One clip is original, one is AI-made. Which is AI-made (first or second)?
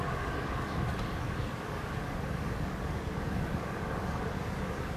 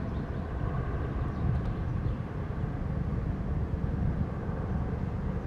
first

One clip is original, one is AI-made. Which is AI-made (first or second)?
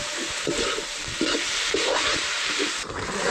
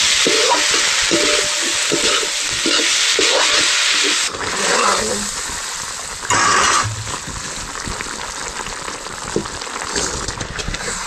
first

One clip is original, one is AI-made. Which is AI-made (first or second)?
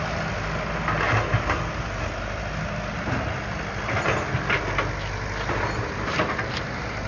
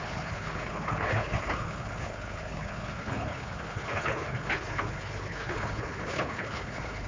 second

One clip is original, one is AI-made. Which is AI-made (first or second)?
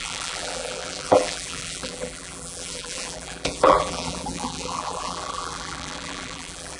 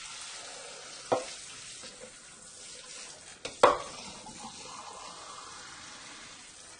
first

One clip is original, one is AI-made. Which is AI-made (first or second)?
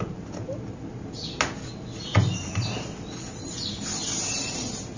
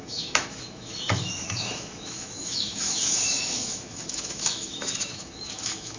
second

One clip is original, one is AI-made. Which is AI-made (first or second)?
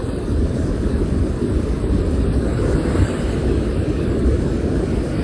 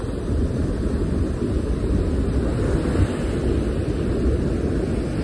first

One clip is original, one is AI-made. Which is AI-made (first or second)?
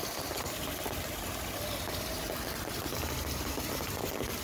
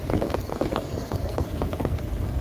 second